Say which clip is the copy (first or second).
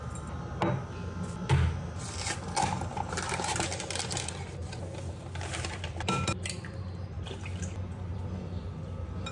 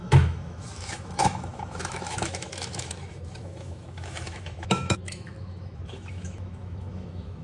second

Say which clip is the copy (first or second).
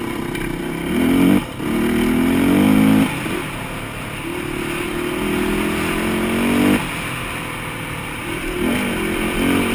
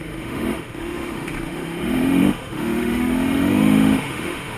second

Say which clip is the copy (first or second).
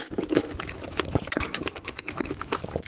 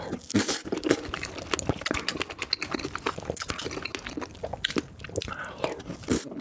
first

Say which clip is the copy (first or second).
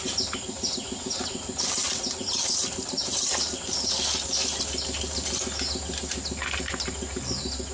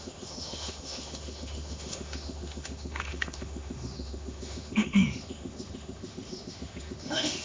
second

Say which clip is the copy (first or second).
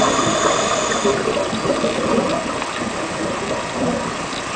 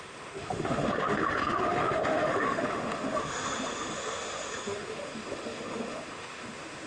second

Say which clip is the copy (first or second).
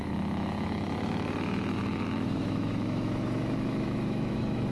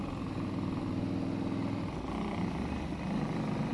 first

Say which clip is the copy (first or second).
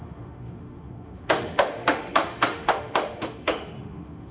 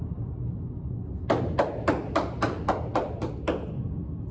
first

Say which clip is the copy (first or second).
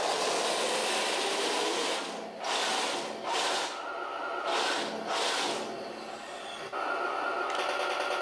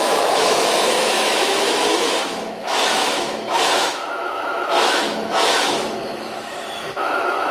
second